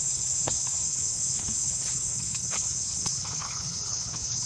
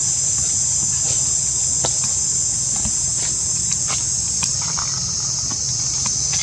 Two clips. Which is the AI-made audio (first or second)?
first